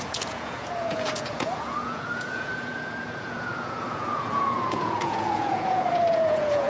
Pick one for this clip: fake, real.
fake